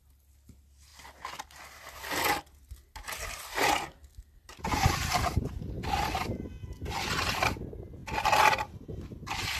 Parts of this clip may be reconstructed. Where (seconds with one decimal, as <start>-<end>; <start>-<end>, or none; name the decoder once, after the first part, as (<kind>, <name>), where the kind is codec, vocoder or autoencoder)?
4.5-6.0 (vocoder, BigVGAN v2)